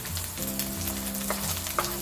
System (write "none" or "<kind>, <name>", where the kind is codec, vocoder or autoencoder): none